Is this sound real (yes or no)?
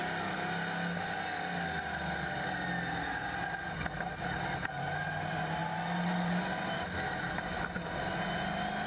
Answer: yes